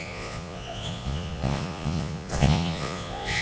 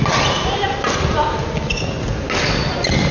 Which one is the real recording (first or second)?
second